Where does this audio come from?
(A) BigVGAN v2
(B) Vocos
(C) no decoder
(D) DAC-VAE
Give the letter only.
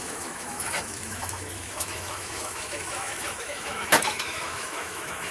D